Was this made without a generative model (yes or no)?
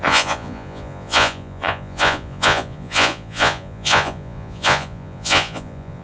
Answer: no